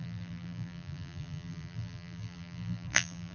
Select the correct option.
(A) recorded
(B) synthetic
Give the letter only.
B